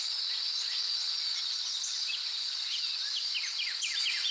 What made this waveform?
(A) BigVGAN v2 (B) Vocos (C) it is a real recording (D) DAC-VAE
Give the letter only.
C